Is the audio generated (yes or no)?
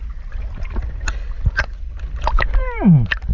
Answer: no